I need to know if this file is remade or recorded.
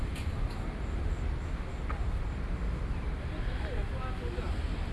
recorded